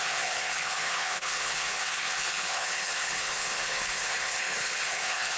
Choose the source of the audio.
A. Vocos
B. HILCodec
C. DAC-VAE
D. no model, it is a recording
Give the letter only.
B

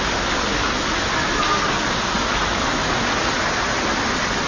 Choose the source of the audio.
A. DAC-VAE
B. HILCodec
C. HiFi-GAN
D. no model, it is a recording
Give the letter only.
D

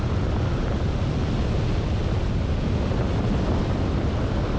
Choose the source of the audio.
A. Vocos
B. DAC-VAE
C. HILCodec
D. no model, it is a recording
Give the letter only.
D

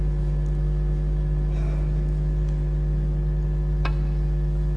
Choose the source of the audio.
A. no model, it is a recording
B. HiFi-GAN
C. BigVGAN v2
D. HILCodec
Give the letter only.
A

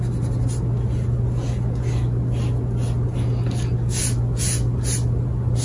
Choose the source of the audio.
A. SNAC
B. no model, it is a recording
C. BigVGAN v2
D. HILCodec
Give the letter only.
B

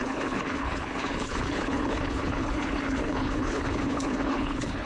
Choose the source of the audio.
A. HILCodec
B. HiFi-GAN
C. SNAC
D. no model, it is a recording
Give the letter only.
A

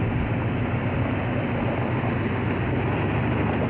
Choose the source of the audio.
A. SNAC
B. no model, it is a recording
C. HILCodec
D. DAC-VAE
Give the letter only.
B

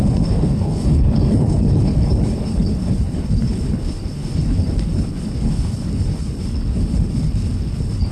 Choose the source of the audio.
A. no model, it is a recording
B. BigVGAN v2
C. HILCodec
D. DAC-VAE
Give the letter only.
C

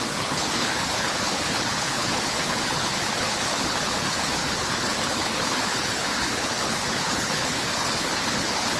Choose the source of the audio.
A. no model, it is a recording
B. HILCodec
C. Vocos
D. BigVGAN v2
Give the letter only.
B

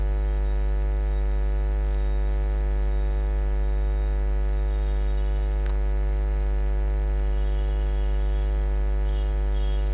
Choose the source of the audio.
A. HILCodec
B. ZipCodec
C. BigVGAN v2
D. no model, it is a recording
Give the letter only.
D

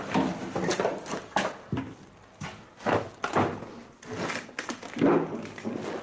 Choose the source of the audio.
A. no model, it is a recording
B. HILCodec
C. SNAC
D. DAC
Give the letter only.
A